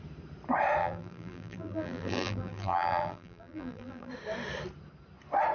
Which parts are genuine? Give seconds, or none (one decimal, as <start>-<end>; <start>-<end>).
0.0-0.8; 4.1-5.5